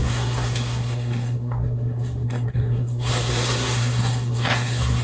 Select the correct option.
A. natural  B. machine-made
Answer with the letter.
B